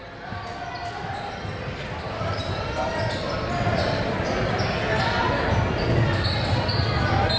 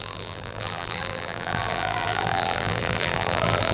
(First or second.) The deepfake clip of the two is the second